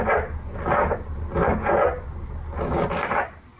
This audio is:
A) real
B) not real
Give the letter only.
A